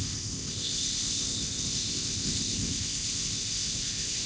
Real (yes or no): no